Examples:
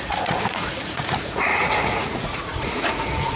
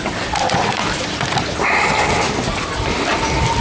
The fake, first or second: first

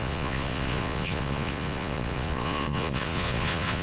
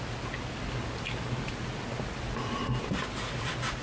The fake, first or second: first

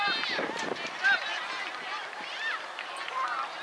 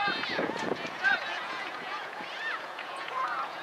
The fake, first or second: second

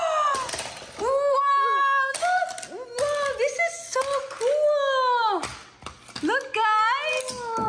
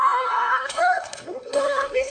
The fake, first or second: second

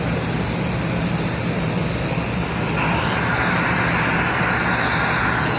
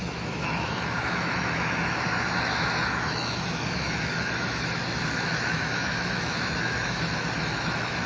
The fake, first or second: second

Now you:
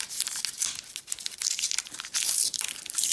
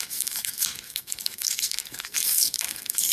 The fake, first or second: second